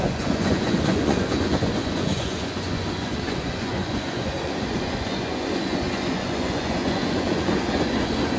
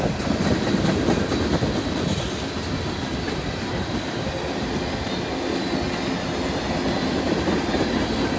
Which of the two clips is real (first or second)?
second